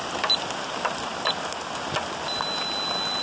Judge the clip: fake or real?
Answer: real